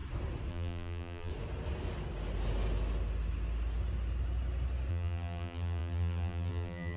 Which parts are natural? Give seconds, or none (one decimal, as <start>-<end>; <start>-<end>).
0.0-0.5; 1.3-4.9

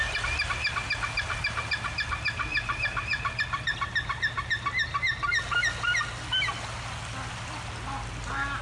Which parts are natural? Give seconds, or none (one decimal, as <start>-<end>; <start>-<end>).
0.0-2.5; 5.3-8.6

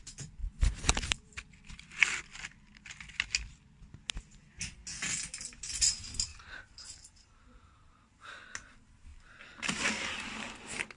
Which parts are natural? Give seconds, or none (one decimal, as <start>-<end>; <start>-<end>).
0.0-0.4; 1.4-6.3; 8.3-11.0

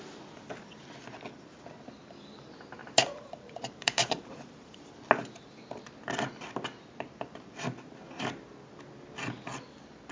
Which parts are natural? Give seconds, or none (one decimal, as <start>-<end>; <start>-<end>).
0.0-2.8; 4.9-10.1